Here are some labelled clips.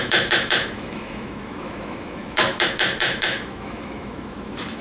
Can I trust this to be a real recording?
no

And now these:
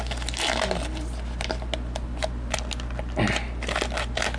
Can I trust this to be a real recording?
yes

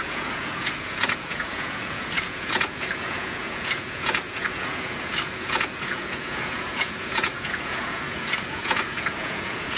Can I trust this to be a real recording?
no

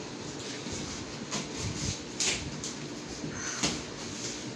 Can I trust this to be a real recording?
yes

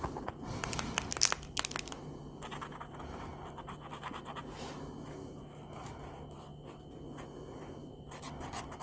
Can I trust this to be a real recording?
yes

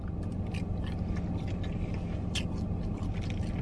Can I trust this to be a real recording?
yes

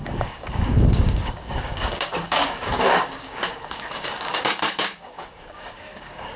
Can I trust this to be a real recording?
no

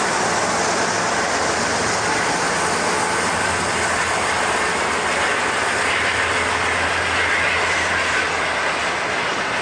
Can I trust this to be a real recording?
yes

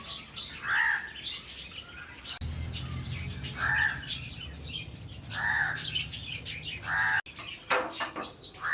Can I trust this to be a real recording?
yes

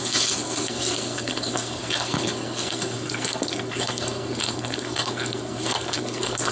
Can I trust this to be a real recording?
no